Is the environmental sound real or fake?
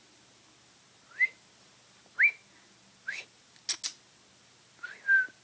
real